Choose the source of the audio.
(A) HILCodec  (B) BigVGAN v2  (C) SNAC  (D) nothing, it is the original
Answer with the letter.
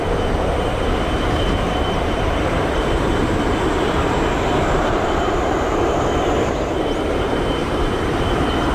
B